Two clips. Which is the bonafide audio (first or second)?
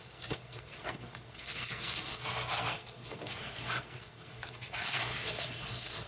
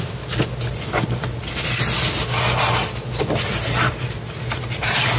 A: second